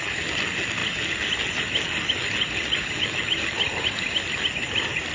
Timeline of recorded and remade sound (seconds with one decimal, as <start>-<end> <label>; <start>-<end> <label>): 0.0-5.1 recorded